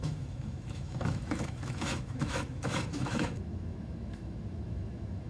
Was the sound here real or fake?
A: fake